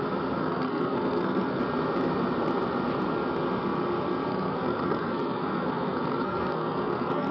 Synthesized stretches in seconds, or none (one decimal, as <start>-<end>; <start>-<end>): 0.4-1.6; 4.3-7.3